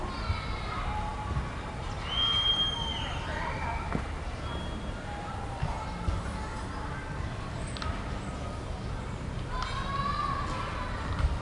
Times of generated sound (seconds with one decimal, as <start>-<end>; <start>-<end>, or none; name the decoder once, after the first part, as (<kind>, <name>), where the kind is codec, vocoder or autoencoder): none